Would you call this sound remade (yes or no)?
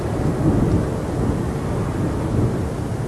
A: no